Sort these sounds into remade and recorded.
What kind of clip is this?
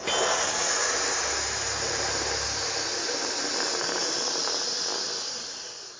recorded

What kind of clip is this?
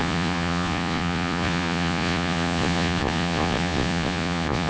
remade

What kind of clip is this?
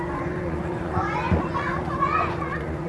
remade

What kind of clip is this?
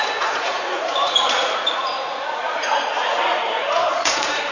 remade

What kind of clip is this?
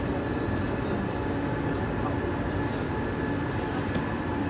recorded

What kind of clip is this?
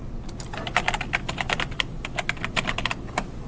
recorded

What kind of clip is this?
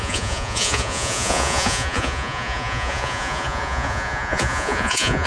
remade